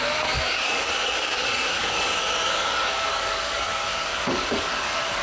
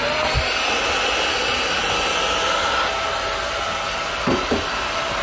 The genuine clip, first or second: second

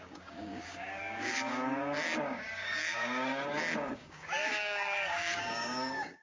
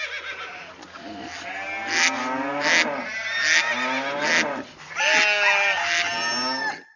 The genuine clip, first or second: second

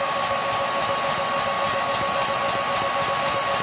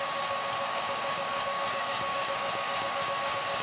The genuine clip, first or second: first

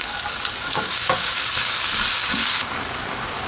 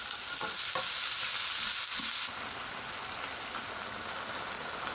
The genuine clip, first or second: second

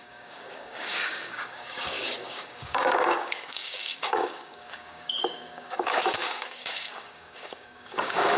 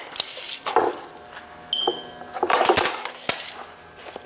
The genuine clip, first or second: second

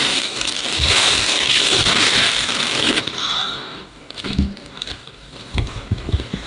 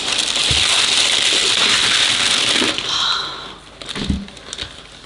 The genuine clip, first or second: second